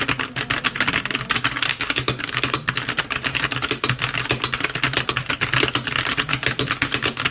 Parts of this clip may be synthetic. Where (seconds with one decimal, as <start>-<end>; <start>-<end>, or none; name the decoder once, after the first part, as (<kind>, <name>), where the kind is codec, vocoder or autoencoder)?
1.7-2.4 (codec, DAC)